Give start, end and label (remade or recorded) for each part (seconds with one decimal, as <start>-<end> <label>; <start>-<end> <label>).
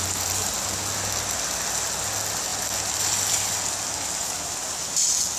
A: 0.0-5.4 recorded